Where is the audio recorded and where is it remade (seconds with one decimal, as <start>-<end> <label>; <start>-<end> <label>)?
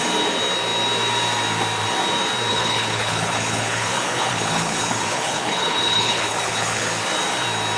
0.0-2.5 recorded; 2.5-6.9 remade; 6.9-7.8 recorded